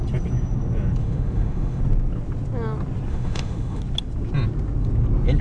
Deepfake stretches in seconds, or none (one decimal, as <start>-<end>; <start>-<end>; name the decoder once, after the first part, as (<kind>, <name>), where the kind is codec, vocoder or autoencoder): 1.0-1.8 (autoencoder, DAC-VAE); 3.1-3.8